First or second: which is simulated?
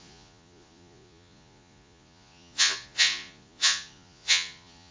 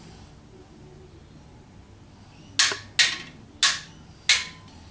first